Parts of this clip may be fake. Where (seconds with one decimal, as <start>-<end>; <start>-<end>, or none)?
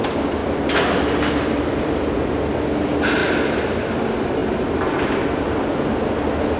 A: 0.4-2.3; 4.4-5.8